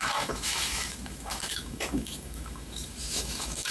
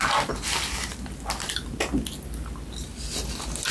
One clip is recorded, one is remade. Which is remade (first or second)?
first